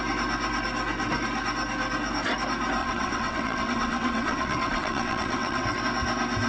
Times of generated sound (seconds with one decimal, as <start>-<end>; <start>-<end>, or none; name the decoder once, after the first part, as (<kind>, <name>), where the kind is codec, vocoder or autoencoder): 2.8-5.8 (vocoder, WaveNeXt)